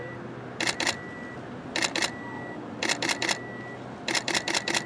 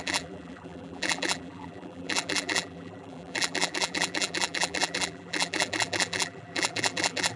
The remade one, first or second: second